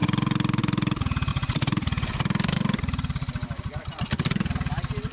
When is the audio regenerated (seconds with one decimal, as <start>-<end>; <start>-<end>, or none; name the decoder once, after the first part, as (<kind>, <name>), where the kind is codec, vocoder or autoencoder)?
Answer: 1.3-3.6 (vocoder, BigVGAN v2)